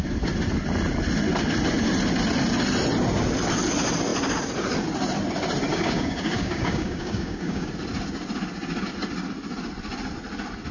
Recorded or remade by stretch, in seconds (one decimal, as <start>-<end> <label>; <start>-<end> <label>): 0.0-5.7 recorded; 5.7-7.7 remade; 7.7-10.7 recorded